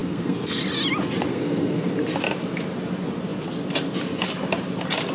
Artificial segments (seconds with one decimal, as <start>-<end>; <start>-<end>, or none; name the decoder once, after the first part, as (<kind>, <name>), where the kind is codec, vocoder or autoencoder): 0.0-0.6 (codec, SNAC); 1.3-1.9